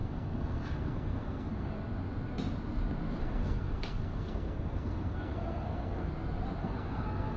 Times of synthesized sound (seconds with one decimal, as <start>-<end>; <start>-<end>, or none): 0.0-1.7; 3.2-6.1; 6.6-7.4